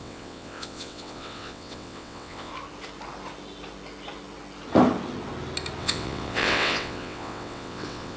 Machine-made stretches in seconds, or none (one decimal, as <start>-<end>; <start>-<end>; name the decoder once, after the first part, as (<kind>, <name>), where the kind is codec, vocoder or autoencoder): 0.0-2.5 (vocoder, WaveNeXt); 5.8-8.2